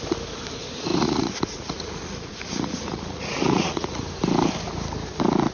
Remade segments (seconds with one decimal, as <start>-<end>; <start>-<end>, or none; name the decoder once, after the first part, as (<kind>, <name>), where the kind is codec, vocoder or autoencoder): 0.9-4.0 (vocoder, Vocos)